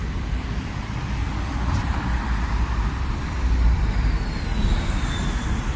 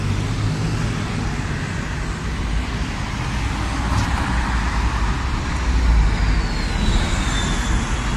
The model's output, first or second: first